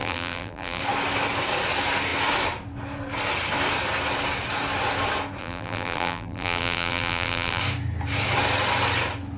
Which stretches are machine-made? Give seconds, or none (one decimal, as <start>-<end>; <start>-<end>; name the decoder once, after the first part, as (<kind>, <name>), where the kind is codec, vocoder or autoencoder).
0.0-0.8 (vocoder, BigVGAN v2); 5.4-7.6

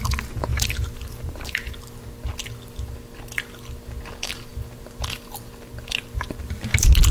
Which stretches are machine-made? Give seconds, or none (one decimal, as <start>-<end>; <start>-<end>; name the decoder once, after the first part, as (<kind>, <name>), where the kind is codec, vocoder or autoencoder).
0.5-1.8 (vocoder, BigVGAN v2)